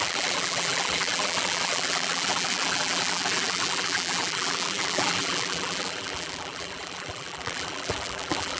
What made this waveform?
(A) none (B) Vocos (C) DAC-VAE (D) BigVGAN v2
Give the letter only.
D